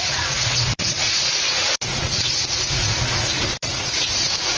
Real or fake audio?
fake